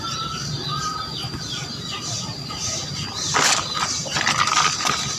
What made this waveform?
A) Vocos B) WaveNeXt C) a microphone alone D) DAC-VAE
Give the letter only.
C